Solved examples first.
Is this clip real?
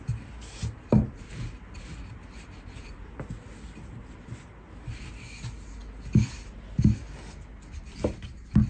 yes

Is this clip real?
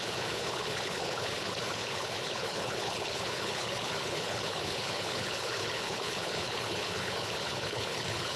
no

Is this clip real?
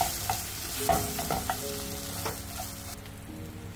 yes